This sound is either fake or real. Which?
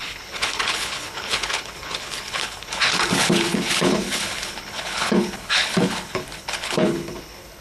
fake